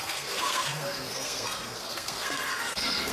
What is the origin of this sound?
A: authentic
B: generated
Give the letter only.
B